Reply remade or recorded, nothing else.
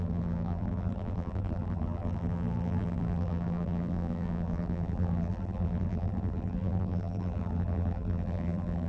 remade